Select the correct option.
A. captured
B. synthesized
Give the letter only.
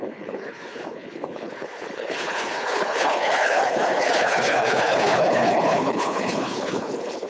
B